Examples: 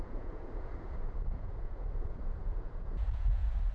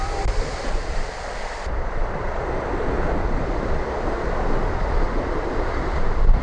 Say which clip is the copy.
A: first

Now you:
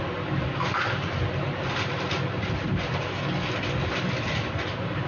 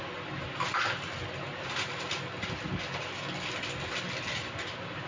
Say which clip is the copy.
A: first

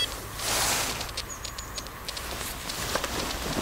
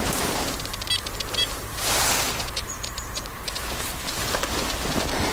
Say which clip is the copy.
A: second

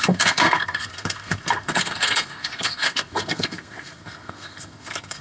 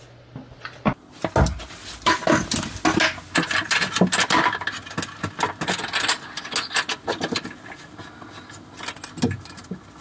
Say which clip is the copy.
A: first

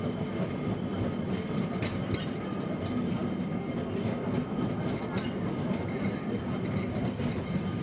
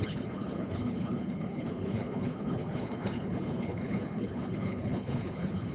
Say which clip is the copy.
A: second